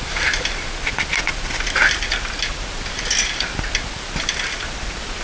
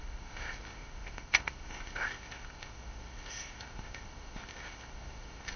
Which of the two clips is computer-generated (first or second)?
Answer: second